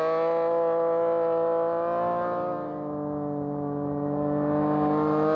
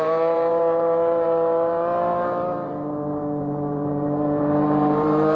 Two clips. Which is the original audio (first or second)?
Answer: first